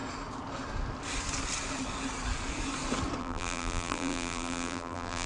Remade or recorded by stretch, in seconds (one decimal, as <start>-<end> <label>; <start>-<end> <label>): 0.0-3.2 recorded; 3.2-5.3 remade